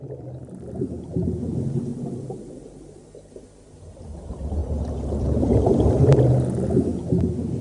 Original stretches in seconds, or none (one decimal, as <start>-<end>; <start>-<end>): 0.0-0.4; 1.1-1.9; 3.3-4.6; 6.2-7.6